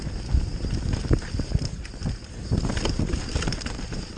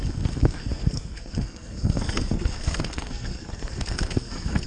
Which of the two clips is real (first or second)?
first